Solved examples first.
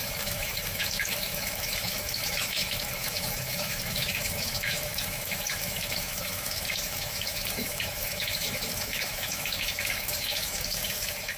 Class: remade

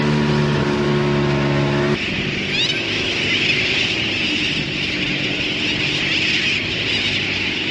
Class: recorded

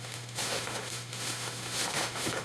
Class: remade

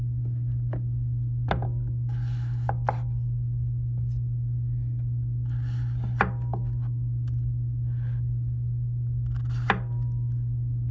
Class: recorded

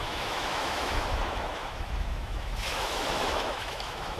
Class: remade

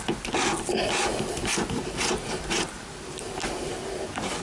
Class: recorded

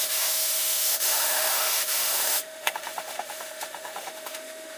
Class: remade